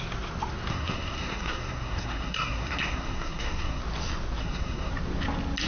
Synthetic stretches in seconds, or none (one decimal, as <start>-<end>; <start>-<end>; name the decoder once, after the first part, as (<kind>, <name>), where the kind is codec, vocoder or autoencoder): 0.7-3.8 (codec, SNAC); 4.4-4.9